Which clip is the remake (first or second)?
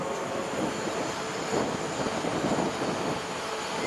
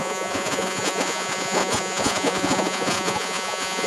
second